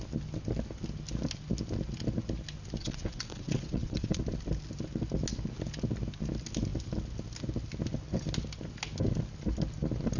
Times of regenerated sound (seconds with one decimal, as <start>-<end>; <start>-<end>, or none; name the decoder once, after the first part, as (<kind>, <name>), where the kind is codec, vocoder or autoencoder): 2.8-4.2 (vocoder, WaveNeXt)